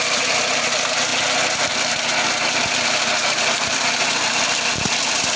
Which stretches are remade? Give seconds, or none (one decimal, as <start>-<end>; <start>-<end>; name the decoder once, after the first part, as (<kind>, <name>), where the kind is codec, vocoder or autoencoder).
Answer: none